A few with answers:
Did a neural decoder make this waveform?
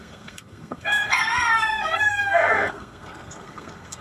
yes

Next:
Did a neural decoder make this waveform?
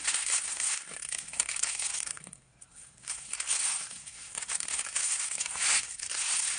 yes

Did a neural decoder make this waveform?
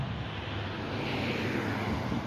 no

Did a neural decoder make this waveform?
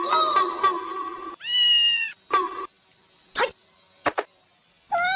no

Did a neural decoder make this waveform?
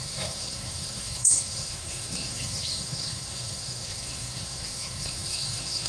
yes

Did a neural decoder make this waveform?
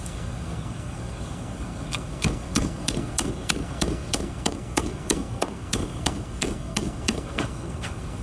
yes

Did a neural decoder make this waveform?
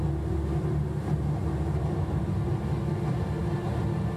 no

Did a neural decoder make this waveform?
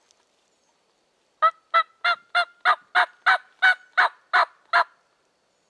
no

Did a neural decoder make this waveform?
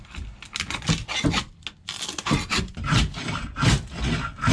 no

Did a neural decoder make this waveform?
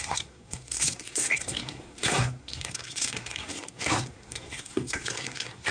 yes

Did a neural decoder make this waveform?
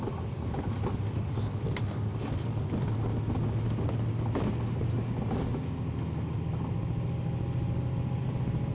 no